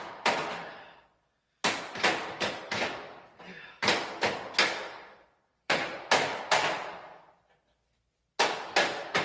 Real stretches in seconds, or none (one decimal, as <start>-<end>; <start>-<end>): 0.0-5.5; 6.4-9.2